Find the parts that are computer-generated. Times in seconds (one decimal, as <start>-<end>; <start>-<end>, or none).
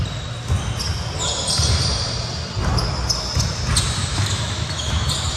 4.0-4.9